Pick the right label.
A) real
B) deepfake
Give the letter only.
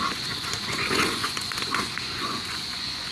B